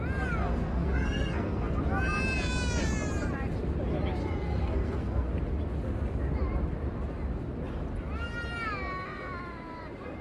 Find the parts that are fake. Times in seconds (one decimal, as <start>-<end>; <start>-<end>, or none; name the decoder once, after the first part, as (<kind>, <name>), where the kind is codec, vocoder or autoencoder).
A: 0.5-1.8 (codec, SNAC); 4.2-5.3

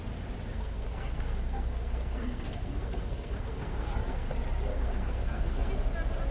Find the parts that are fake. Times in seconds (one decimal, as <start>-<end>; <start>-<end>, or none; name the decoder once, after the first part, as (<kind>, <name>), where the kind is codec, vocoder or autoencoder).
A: 0.5-4.3 (codec, SNAC); 4.7-5.7

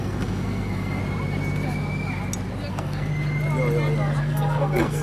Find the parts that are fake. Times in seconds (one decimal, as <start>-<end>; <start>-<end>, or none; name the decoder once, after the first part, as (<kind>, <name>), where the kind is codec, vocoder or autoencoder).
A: 0.0-1.0 (codec, SNAC); 2.7-3.1; 4.2-5.0

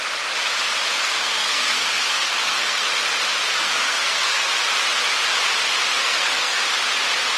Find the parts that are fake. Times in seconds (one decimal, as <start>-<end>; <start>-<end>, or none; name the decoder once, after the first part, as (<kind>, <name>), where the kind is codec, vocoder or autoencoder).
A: 1.0-2.9 (codec, SNAC); 3.6-4.5; 6.0-6.6